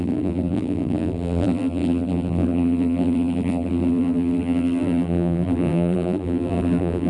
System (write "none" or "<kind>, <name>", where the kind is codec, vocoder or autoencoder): vocoder, BigVGAN v2